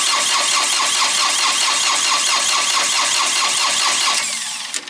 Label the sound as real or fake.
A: real